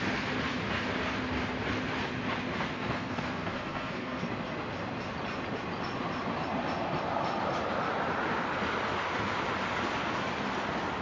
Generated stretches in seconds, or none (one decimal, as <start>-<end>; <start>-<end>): 2.7-4.2